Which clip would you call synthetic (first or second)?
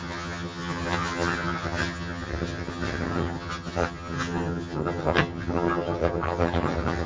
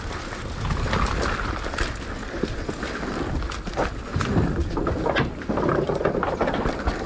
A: first